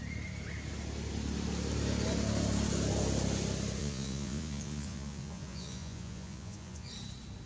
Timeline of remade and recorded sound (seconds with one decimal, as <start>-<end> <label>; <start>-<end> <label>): 0.0-3.8 recorded; 3.8-6.9 remade; 6.9-7.5 recorded